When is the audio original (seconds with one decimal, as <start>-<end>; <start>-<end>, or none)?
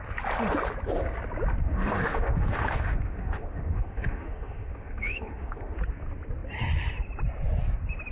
0.0-1.6; 5.8-8.1